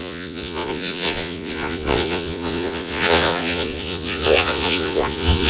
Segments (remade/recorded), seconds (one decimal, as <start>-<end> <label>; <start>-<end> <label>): 0.0-5.5 remade